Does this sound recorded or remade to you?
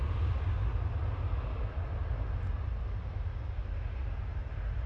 recorded